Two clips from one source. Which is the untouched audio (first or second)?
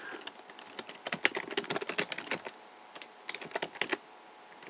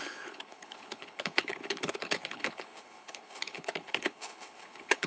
first